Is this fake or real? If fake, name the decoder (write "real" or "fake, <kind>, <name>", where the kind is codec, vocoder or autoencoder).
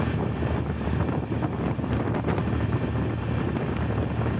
fake, vocoder, BigVGAN v2